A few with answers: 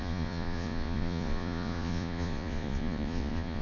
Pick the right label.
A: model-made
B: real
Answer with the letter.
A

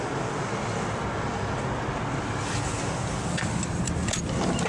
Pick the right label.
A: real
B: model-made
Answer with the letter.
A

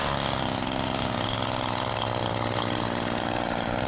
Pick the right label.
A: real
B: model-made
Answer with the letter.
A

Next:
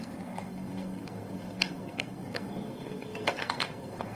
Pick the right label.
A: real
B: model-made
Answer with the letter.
B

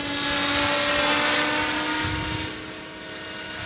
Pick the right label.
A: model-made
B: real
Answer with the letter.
B